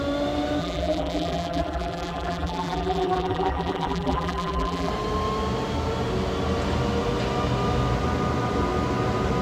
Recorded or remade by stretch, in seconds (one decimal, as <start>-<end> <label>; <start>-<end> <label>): 0.0-0.6 recorded; 0.6-4.9 remade; 4.9-9.4 recorded